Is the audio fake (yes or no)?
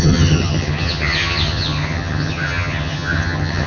yes